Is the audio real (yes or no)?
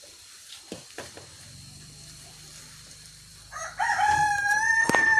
no